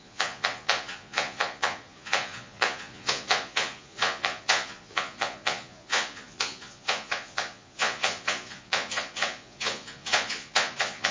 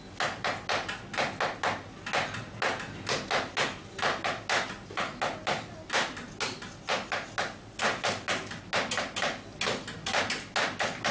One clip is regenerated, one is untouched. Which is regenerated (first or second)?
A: first